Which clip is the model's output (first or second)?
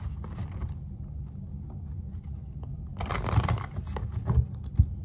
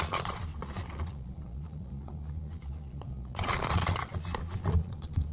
second